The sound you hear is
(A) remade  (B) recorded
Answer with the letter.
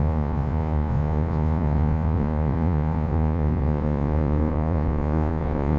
A